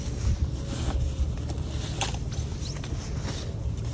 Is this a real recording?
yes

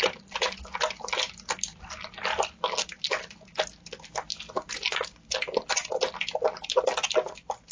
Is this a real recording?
yes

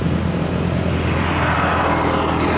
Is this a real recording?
yes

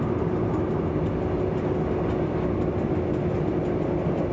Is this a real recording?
yes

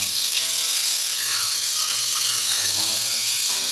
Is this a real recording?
no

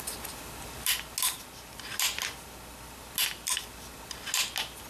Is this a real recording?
yes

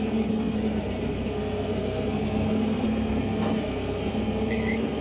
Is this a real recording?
no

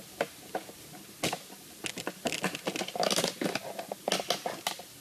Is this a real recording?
yes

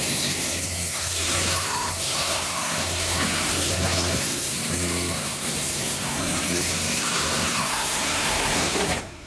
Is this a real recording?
no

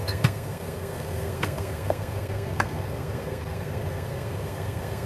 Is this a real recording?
no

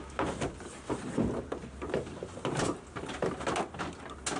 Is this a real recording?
yes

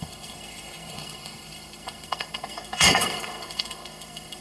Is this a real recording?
no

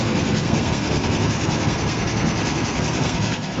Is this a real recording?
no